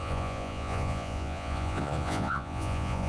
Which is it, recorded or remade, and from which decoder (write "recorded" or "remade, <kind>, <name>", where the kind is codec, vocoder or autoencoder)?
remade, vocoder, Vocos